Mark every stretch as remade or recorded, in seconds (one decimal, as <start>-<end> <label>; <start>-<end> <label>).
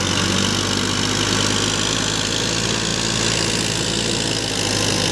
0.0-5.1 recorded